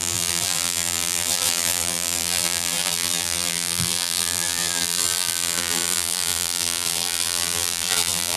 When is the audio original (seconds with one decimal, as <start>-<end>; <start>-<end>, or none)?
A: none